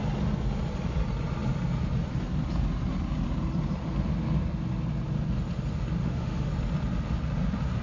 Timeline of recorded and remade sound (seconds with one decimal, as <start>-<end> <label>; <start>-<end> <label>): 0.0-6.0 recorded; 6.0-6.5 remade; 6.5-7.8 recorded